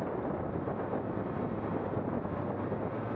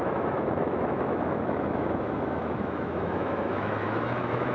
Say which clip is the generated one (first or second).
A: second